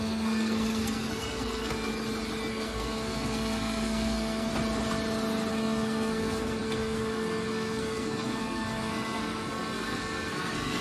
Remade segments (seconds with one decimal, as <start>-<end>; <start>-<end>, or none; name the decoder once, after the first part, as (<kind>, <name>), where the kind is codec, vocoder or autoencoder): 0.0-1.9 (codec, SNAC); 2.5-4.5; 5.5-10.8